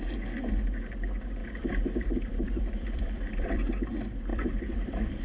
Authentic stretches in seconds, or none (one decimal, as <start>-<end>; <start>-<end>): 0.0-1.4; 3.9-4.3